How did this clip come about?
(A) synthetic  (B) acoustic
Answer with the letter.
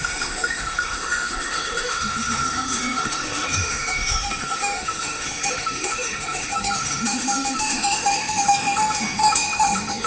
A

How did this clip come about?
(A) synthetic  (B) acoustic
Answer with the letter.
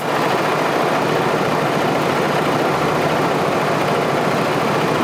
B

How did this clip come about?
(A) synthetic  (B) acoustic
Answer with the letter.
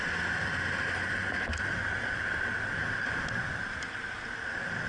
B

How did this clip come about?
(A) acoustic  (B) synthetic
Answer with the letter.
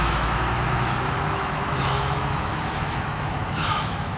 B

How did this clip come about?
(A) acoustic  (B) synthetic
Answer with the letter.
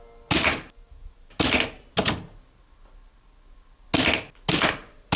A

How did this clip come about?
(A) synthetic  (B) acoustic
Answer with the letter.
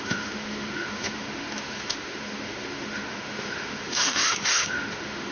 A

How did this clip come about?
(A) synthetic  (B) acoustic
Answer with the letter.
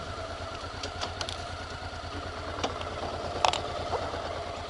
B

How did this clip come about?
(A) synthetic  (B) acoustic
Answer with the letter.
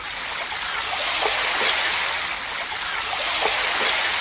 B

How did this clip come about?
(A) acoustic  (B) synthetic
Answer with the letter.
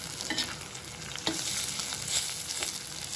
A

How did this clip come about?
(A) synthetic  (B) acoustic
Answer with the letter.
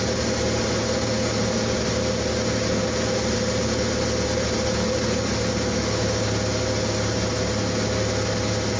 B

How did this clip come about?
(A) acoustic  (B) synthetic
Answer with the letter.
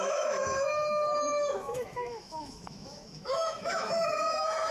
B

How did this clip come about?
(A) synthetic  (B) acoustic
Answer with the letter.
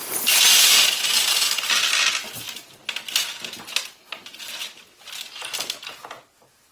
B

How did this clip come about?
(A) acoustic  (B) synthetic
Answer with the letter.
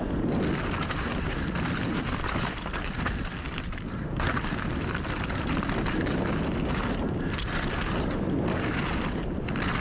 A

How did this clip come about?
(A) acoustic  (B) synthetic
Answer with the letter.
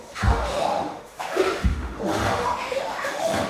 B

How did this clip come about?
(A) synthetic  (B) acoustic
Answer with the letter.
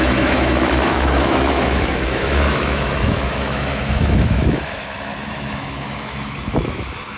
A